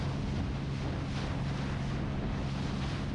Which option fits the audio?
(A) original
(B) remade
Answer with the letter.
A